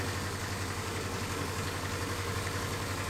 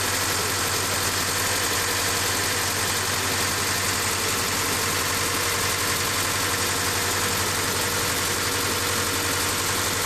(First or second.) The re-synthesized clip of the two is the first